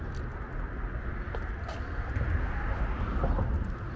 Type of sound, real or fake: real